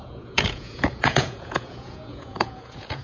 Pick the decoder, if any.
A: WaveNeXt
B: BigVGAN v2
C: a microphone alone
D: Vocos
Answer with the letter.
D